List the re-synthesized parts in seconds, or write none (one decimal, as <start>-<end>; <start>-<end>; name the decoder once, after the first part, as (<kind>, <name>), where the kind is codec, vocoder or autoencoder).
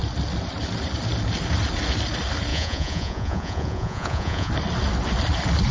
2.5-4.5 (vocoder, Vocos)